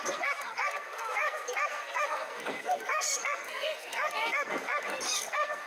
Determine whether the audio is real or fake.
fake